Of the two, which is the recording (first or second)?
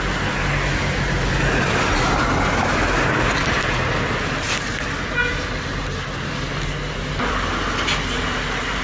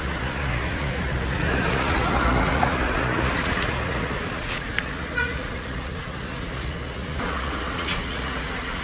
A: first